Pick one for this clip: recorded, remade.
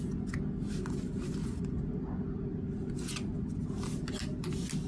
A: recorded